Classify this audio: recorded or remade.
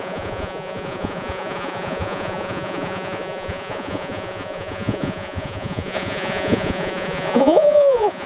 remade